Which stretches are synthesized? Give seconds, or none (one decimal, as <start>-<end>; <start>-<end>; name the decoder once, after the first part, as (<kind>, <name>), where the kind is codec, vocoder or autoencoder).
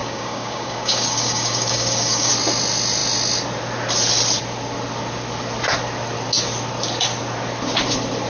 0.0-2.3 (codec, DAC)